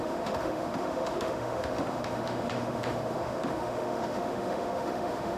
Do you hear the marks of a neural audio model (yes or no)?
yes